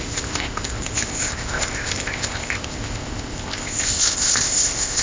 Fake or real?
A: fake